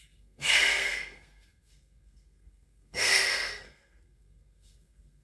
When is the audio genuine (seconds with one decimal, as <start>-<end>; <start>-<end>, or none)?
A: none